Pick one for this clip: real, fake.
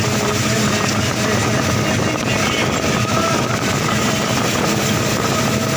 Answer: real